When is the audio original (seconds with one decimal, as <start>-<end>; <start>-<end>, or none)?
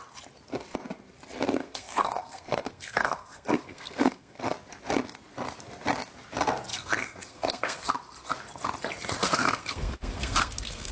0.0-1.6; 4.4-6.7; 7.9-9.2